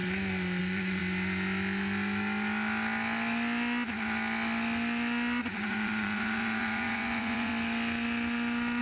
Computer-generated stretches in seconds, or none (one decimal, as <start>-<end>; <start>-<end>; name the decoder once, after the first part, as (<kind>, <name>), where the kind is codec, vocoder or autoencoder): 0.6-1.0 (vocoder, Vocos); 5.4-7.5